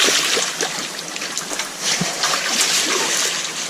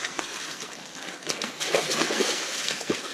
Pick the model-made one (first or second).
second